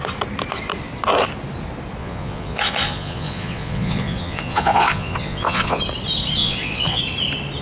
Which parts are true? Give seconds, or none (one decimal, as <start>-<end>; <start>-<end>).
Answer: 0.0-2.0; 5.8-6.4; 7.0-7.6